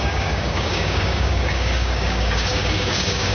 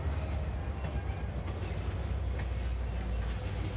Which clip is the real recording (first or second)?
second